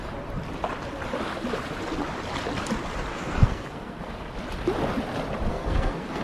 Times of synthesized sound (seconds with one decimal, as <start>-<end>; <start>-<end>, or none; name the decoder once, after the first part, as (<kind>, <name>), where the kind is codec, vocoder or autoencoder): 3.1-4.3 (codec, SNAC); 5.5-6.2